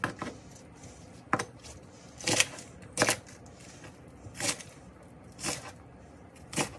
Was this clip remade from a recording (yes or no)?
no